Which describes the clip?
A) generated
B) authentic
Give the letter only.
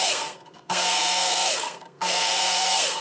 A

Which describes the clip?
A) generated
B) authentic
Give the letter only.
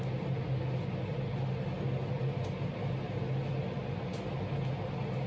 B